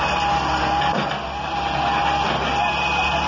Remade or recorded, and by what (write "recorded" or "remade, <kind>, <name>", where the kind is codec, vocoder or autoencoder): recorded